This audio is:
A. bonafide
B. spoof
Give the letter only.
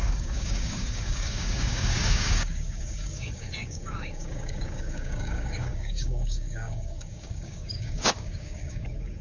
B